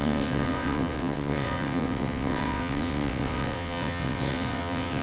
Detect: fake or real fake